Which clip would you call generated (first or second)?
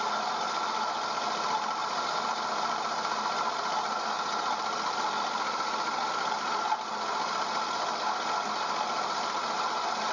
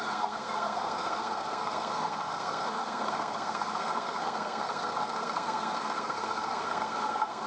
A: second